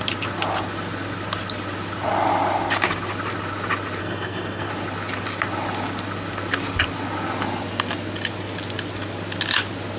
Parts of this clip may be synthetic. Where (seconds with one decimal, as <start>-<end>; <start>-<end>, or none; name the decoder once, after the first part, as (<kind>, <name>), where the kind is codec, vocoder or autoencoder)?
4.0-4.7 (codec, SNAC)